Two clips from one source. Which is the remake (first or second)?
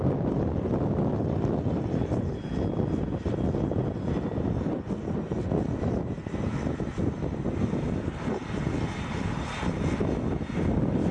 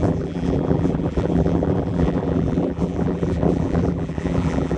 second